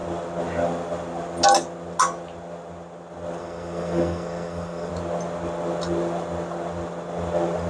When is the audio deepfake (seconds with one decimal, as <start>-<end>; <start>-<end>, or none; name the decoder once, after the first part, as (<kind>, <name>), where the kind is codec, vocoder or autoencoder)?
3.4-4.9 (codec, SNAC)